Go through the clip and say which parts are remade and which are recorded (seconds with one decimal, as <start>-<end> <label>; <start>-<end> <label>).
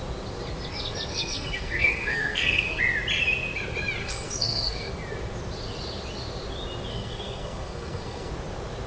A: 0.0-1.1 recorded; 1.1-2.8 remade; 2.8-4.0 recorded; 4.0-4.9 remade; 4.9-6.9 recorded; 6.9-8.3 remade; 8.3-8.9 recorded